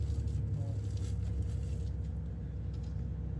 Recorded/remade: recorded